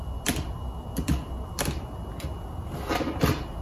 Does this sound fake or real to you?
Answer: real